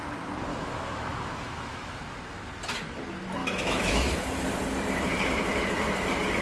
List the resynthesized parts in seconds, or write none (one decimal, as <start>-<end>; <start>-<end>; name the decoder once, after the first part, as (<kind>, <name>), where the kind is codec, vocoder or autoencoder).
0.5-2.0 (autoencoder, DAC-VAE); 3.4-4.1